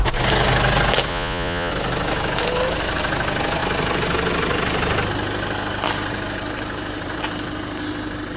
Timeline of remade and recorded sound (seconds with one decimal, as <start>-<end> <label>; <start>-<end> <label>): 0.0-1.1 recorded; 1.1-1.7 remade; 1.7-8.4 recorded